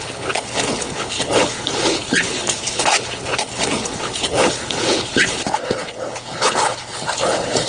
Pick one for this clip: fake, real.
fake